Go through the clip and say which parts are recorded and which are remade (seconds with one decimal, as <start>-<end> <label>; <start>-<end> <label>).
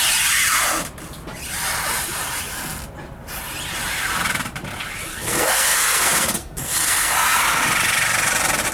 0.0-5.1 recorded; 5.1-7.6 remade; 7.6-8.7 recorded